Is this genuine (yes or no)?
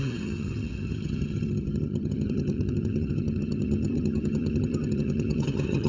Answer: no